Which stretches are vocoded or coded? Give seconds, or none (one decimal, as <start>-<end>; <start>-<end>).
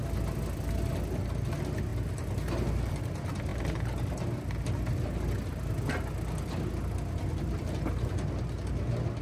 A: none